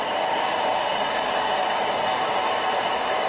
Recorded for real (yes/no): no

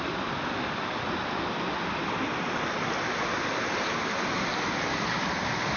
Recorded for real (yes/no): yes